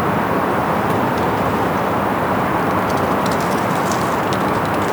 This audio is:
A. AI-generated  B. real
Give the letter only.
B